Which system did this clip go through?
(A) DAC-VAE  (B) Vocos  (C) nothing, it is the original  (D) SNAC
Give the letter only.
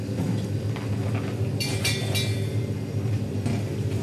C